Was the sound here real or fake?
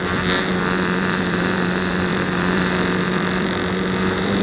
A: fake